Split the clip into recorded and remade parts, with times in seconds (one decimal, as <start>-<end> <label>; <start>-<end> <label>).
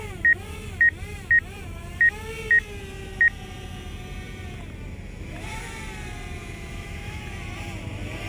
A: 0.0-6.4 recorded; 6.4-7.2 remade; 7.2-8.3 recorded